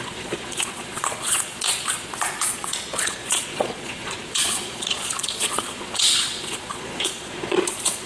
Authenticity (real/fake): fake